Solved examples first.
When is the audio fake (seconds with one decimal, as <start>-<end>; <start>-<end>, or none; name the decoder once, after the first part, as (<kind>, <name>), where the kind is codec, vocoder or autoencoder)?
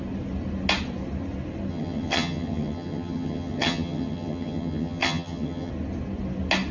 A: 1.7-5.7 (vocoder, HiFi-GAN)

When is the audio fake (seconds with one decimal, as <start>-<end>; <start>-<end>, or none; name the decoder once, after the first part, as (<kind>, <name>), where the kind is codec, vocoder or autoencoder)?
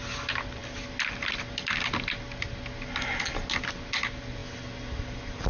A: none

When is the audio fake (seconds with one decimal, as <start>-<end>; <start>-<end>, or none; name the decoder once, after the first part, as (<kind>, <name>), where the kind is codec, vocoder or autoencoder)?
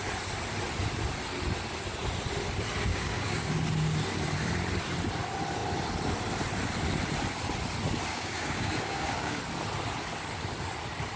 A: 2.9-3.5 (codec, DAC); 8.1-9.4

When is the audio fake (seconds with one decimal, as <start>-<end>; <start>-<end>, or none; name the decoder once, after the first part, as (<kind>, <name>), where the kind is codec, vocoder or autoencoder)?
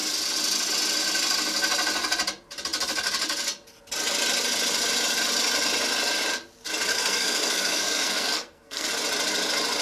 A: 6.9-8.9 (codec, SNAC)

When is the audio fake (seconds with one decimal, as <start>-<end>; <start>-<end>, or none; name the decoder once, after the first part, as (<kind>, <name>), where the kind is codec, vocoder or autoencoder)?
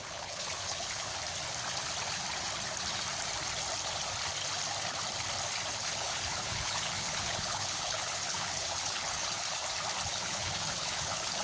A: 0.0-1.1 (codec, HILCodec); 5.7-9.6; 10.1-11.4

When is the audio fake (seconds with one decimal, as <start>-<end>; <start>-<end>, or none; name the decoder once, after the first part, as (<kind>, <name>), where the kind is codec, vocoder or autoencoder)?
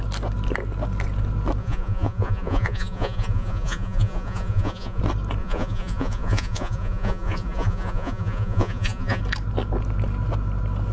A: 1.6-5.0 (vocoder, Vocos); 5.4-9.2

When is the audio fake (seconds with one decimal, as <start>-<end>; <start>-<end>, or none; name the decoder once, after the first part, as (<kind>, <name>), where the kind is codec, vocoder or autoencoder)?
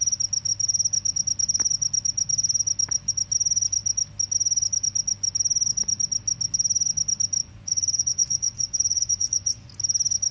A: 7.4-9.7 (vocoder, Vocos)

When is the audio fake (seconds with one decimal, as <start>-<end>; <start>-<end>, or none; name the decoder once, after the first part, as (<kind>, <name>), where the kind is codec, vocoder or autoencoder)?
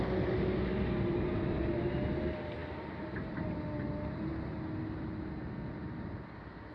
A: none